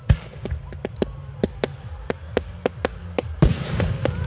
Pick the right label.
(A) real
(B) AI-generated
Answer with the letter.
A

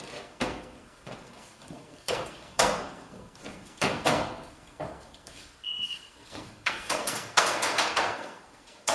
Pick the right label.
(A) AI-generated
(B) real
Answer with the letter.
A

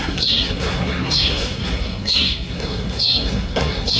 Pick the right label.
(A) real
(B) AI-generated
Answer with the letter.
B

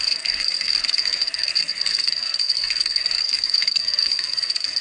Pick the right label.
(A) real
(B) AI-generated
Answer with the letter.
B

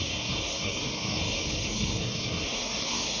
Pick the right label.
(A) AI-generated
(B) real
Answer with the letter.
A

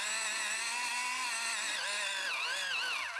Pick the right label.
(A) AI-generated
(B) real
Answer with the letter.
B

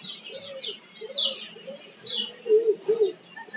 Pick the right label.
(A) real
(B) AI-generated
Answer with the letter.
A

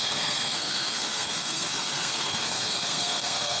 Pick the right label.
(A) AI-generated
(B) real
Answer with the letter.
A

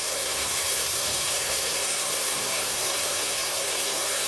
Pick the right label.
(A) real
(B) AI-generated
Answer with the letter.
B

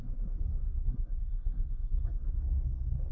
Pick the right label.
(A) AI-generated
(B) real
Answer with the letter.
A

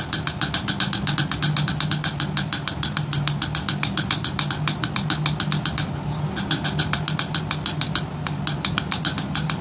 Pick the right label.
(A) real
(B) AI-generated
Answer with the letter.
A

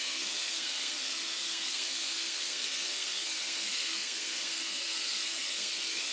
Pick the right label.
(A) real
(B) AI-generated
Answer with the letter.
B